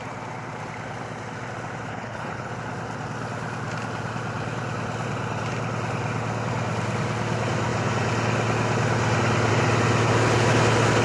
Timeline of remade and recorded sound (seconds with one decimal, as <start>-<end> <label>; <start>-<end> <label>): 0.0-1.9 recorded; 1.9-2.5 remade; 2.5-11.0 recorded